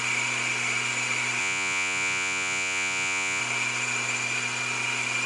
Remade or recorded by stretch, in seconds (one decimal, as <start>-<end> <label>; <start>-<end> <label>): 0.0-1.4 recorded; 1.4-3.4 remade; 3.4-5.3 recorded